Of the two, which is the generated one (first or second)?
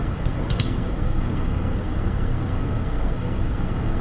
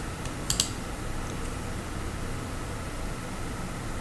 first